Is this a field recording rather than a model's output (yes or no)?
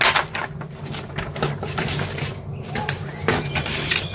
yes